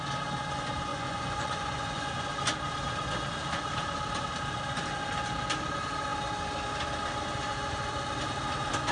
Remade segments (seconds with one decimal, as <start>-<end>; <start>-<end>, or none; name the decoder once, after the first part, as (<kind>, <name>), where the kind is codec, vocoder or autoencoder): 0.9-2.2 (vocoder, Vocos)